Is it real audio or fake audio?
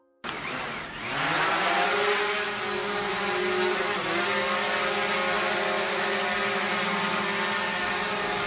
real